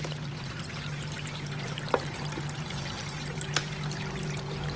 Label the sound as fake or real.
fake